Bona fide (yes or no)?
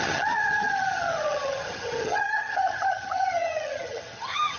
no